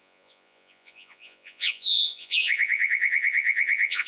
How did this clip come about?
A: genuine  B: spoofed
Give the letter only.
B